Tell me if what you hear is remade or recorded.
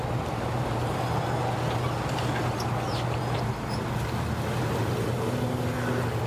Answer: recorded